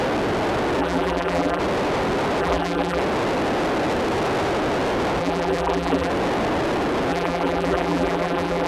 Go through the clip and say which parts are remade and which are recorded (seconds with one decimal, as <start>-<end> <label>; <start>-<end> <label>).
0.0-0.8 recorded; 0.8-1.6 remade; 1.6-2.4 recorded; 2.4-3.0 remade; 3.0-5.2 recorded; 5.2-6.1 remade; 6.1-7.1 recorded; 7.1-8.7 remade